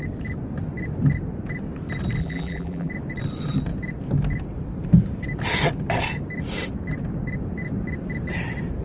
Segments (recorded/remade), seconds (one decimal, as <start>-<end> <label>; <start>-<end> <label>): 0.0-2.2 recorded; 2.2-2.9 remade; 2.9-8.8 recorded